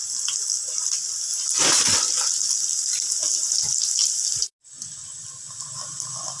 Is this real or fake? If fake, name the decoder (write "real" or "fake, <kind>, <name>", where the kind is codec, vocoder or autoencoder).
real